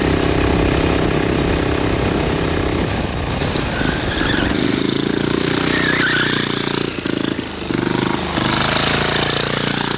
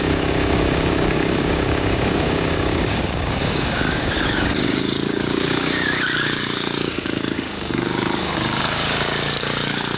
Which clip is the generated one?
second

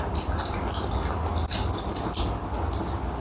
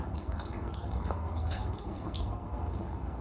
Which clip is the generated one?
second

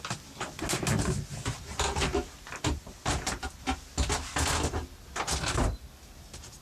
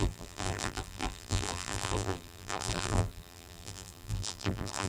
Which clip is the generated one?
second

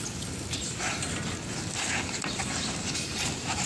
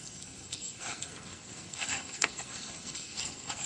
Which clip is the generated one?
second